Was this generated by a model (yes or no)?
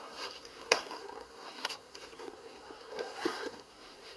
yes